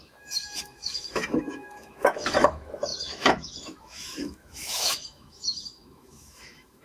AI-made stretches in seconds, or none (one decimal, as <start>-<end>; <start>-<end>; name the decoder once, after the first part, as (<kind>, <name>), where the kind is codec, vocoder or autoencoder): 0.0-6.8 (autoencoder, DAC-VAE)